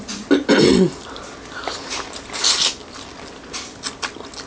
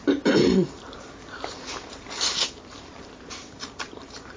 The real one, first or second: first